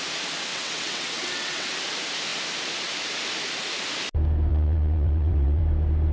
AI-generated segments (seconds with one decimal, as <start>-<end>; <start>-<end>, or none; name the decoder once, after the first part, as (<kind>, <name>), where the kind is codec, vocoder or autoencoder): 0.5-1.7 (vocoder, WaveNeXt); 4.5-5.6